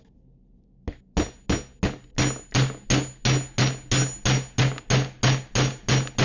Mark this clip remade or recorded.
recorded